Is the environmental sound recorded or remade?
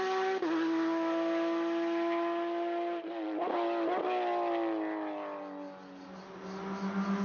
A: recorded